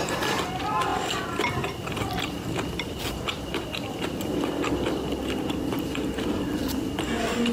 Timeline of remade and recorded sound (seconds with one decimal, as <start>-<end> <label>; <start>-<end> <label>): 0.0-0.9 recorded; 0.9-4.7 remade; 4.7-7.5 recorded